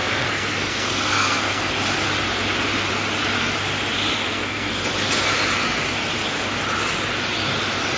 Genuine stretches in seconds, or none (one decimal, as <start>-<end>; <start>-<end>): 1.7-4.1; 4.7-8.0